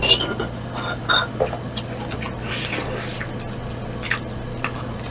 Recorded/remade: recorded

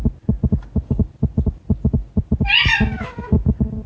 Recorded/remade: recorded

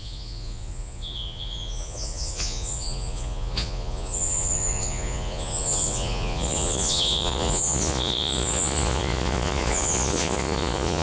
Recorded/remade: remade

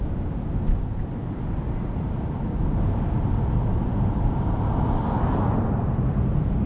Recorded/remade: recorded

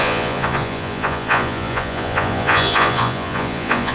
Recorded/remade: remade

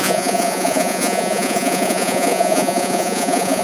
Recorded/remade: remade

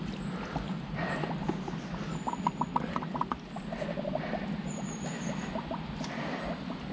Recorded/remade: recorded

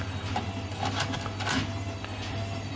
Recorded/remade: recorded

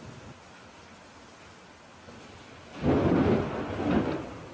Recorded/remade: recorded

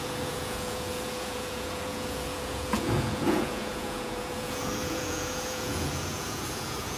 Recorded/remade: remade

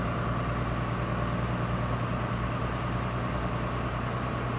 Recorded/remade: recorded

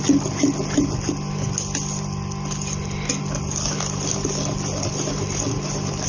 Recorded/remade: recorded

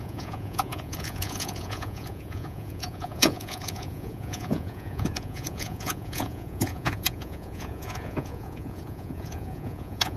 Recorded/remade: remade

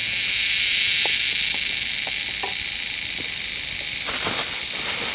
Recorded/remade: recorded